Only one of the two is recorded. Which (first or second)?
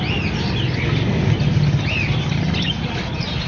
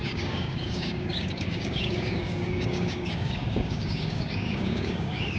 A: first